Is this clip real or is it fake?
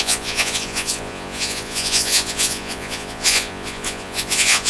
fake